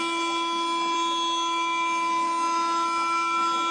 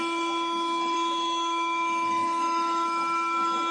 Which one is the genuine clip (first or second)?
first